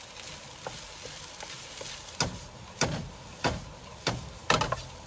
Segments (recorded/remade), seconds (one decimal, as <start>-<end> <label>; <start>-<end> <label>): 0.0-5.1 recorded